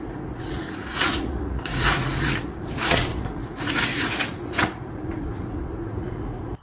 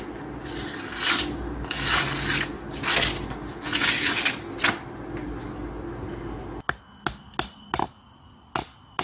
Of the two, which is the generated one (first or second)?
first